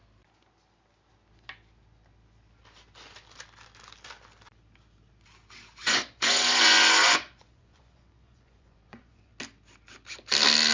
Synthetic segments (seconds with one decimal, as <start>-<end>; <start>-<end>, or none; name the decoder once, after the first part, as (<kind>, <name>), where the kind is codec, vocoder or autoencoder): 5.8-9.3 (vocoder, Vocos)